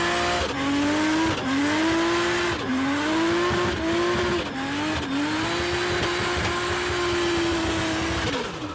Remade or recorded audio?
recorded